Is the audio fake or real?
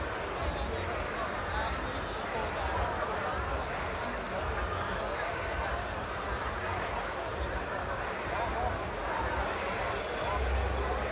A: real